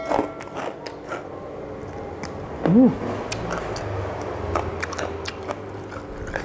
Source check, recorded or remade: recorded